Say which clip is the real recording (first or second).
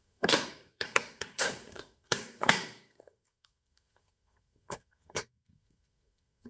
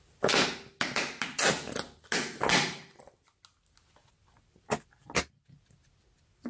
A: second